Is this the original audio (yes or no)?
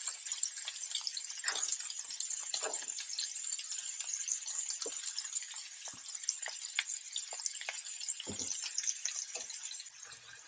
yes